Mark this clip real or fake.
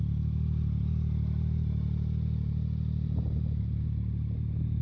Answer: real